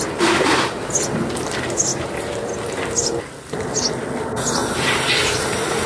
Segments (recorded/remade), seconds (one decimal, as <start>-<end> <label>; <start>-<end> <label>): 0.0-1.9 recorded; 1.9-2.5 remade; 2.5-5.9 recorded